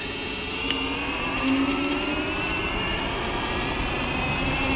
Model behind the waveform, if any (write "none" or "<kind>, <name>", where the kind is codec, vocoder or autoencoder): none